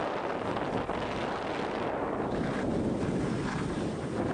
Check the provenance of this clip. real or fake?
real